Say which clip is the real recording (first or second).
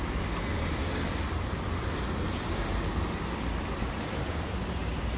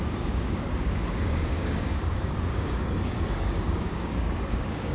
first